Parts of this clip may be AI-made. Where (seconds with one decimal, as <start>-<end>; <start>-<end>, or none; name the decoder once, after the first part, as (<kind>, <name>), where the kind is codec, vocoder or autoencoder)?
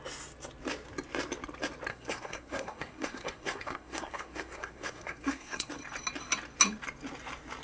1.9-5.7 (codec, SNAC)